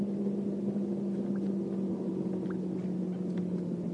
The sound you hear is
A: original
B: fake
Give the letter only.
A